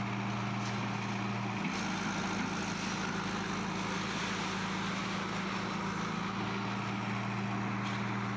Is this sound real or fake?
real